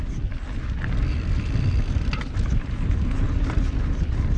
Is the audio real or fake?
real